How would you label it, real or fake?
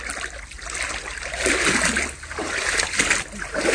real